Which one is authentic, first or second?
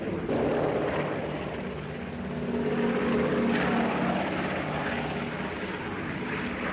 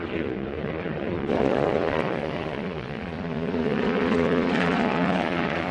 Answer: first